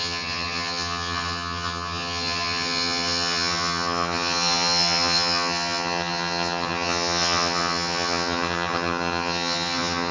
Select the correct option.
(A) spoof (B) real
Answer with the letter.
A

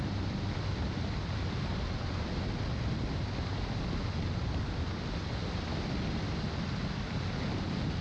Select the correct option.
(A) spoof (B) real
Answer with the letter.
B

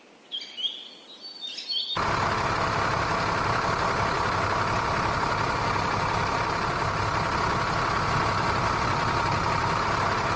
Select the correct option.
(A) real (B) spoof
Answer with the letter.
A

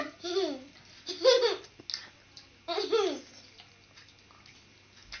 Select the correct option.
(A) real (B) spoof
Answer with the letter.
A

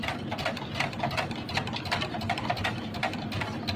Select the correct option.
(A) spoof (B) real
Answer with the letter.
B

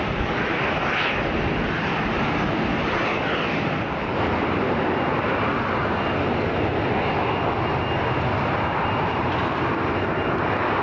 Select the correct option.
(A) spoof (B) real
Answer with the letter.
B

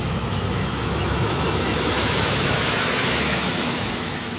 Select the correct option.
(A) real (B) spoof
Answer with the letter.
B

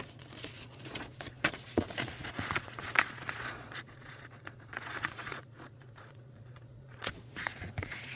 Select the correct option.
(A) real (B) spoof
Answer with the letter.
B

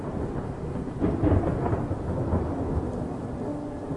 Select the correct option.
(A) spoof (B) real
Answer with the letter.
B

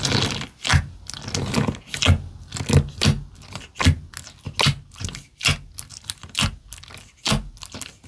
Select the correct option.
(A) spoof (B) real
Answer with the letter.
B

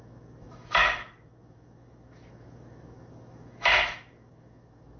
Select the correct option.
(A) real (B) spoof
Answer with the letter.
B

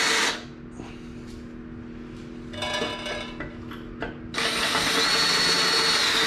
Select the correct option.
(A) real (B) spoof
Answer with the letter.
A